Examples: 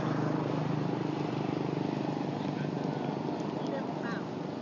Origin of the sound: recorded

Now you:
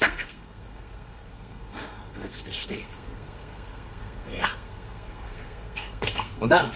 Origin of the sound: remade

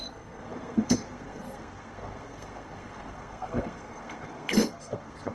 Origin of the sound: remade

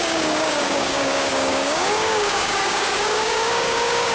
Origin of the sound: remade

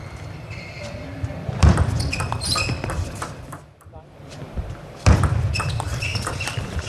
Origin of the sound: remade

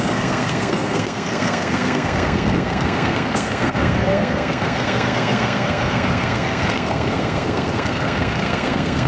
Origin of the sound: remade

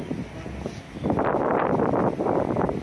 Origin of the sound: recorded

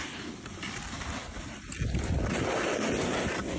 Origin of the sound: recorded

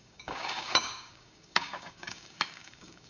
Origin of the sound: remade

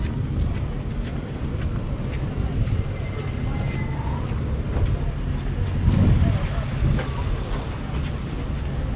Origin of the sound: recorded